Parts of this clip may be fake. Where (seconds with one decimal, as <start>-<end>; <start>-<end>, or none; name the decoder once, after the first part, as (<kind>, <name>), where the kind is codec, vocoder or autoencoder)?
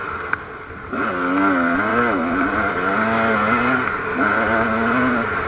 0.0-0.7 (vocoder, BigVGAN v2)